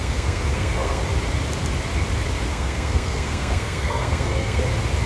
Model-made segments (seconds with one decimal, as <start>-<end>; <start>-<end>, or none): 0.0-1.0; 2.5-4.6